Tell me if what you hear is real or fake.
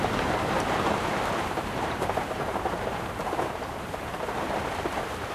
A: fake